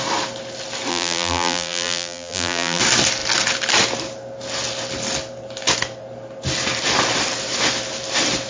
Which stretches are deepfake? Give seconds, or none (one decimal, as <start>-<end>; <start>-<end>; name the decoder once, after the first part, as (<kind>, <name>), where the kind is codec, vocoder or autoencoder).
0.9-2.8 (vocoder, BigVGAN v2)